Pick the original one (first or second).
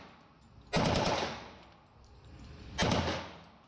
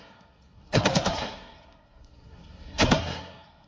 first